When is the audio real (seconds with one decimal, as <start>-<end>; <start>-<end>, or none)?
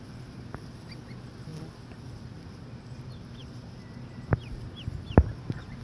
0.0-5.8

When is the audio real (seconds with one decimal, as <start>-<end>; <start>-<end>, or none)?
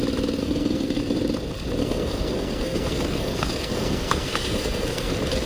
0.0-0.4; 1.0-1.8; 5.1-5.5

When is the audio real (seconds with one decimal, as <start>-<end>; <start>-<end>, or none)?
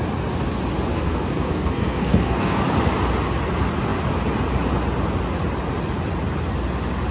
0.0-0.9; 2.6-7.1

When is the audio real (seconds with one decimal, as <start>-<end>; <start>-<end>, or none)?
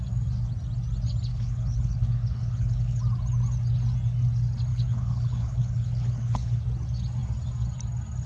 0.0-1.3; 3.0-4.7; 6.6-8.3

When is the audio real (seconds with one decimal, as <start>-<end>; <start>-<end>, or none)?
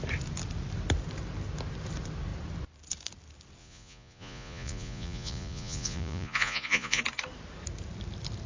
0.0-3.6; 7.0-8.5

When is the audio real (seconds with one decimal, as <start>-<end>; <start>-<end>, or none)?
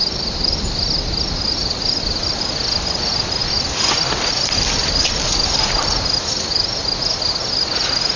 0.0-3.4; 4.3-8.2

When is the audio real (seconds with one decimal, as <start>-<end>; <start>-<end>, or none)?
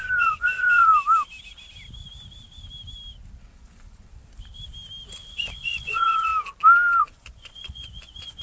0.9-3.4; 4.1-5.3; 6.3-7.0